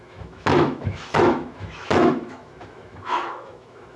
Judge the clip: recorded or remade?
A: remade